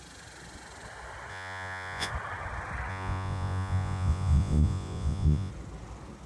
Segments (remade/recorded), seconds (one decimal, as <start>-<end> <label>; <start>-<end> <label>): 0.0-1.3 recorded; 1.3-2.1 remade; 2.1-2.9 recorded; 2.9-5.5 remade; 5.5-6.3 recorded